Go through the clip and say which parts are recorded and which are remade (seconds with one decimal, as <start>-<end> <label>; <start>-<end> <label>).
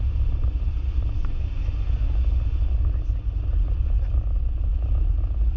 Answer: 0.0-5.6 recorded